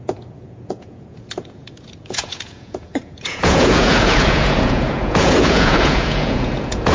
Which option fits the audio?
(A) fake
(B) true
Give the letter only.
A